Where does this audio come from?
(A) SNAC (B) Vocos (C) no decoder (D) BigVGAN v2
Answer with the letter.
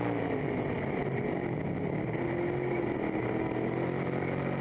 C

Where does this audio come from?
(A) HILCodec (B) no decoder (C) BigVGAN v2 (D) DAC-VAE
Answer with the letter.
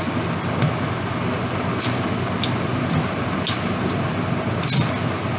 B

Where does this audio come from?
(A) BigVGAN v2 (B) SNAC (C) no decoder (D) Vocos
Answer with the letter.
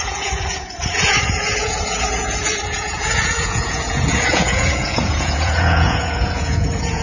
D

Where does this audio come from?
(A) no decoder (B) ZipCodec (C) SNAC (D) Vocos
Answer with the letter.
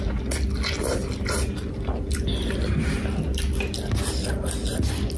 A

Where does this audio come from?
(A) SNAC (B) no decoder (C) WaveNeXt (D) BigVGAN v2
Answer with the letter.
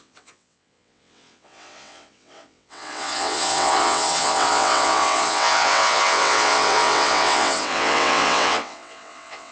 C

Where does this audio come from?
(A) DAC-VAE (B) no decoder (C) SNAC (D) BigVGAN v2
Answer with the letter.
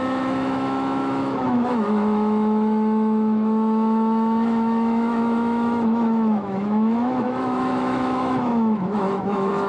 A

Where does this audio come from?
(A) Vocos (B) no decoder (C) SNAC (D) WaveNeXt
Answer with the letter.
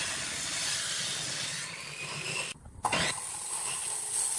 B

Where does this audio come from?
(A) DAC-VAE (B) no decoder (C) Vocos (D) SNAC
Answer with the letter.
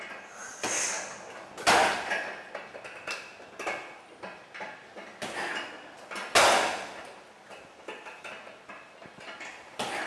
B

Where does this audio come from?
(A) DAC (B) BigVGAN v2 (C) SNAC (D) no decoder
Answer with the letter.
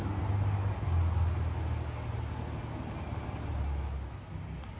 D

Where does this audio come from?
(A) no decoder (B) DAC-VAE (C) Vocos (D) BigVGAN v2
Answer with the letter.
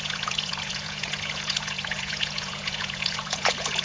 C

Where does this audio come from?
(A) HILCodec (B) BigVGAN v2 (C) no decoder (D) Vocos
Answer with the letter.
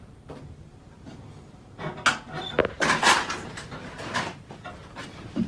C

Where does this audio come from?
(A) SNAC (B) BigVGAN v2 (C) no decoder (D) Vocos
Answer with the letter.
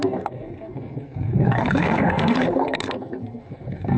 A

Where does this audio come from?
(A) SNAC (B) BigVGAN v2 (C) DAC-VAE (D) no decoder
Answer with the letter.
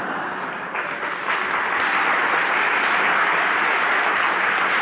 D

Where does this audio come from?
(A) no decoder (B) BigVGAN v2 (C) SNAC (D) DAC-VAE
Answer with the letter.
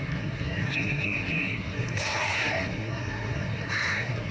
C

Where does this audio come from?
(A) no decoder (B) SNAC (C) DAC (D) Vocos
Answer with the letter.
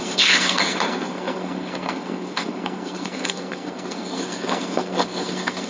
B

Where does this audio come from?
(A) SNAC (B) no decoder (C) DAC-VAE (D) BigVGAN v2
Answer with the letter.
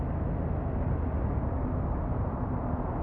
B